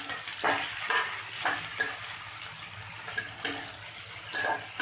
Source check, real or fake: real